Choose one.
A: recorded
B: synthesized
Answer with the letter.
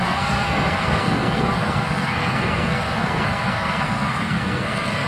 B